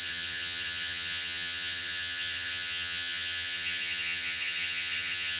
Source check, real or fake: fake